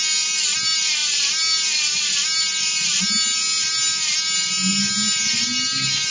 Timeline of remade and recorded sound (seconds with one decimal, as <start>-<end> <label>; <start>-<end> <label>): 0.0-6.1 recorded